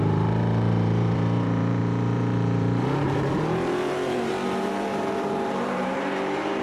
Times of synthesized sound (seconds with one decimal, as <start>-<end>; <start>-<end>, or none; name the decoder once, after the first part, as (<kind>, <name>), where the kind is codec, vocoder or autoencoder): 0.0-6.6 (vocoder, BigVGAN v2)